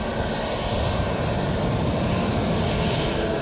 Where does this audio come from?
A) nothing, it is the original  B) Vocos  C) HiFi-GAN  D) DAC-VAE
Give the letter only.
A